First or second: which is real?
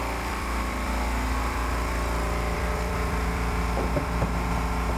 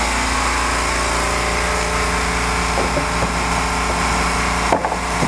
second